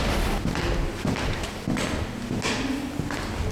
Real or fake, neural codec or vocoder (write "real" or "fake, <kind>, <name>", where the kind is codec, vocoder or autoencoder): real